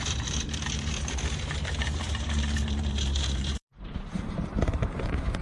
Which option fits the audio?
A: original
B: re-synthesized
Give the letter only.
B